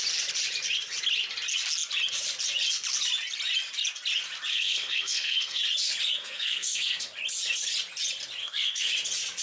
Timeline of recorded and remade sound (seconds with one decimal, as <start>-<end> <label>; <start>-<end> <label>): 0.0-4.5 recorded; 4.5-5.6 remade; 5.6-6.2 recorded; 6.2-7.0 remade; 7.0-8.4 recorded; 8.4-8.9 remade; 8.9-9.4 recorded